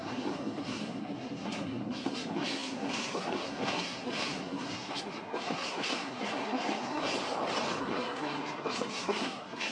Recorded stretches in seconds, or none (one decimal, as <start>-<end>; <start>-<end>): 7.1-7.8